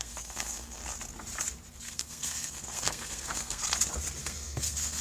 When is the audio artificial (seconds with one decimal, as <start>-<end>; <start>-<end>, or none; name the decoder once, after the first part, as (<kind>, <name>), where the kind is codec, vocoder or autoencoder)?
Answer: 0.0-0.8 (codec, SNAC); 1.7-3.6; 4.2-5.0